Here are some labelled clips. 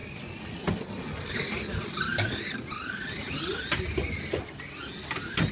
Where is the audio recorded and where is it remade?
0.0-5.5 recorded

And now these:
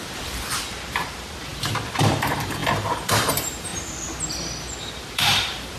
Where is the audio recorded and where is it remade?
0.0-1.0 recorded; 1.0-3.7 remade; 3.7-5.0 recorded; 5.0-5.8 remade